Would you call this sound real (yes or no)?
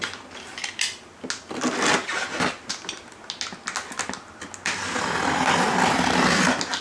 yes